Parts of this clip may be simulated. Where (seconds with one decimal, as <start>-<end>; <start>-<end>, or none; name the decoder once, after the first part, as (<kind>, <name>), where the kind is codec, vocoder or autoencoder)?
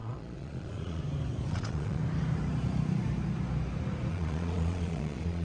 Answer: 0.0-1.0 (vocoder, Vocos); 1.5-2.0; 4.1-5.4